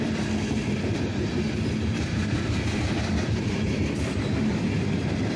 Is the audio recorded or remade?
remade